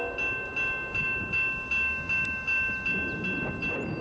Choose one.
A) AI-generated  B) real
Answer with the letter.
B